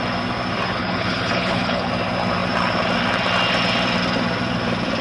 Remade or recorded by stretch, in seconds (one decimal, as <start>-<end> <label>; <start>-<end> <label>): 0.0-0.8 recorded; 0.8-1.9 remade; 1.9-5.0 recorded